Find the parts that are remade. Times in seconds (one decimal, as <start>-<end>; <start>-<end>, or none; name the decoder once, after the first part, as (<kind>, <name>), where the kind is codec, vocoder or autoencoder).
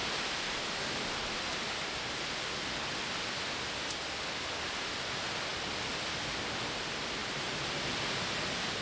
none